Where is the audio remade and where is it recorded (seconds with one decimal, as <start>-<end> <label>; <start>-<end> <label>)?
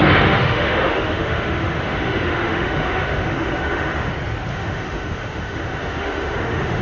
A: 0.0-4.1 remade; 4.1-4.5 recorded; 4.5-6.8 remade